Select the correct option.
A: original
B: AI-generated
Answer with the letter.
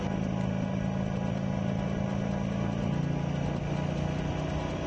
A